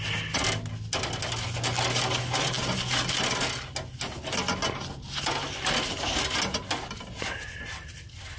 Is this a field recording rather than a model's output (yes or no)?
yes